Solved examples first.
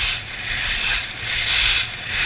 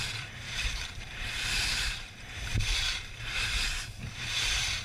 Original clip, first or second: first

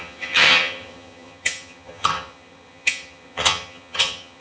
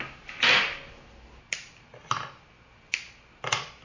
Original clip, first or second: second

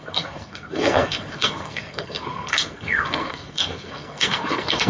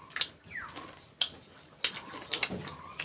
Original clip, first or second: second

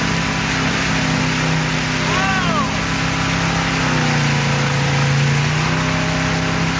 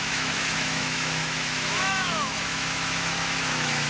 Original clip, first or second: first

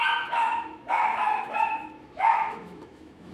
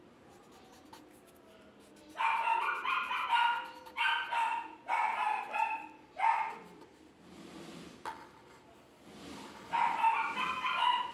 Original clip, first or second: second